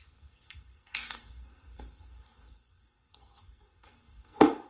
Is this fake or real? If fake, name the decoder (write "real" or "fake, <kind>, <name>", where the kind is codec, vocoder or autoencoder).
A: fake, codec, SNAC